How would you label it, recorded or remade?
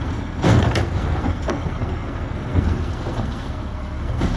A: remade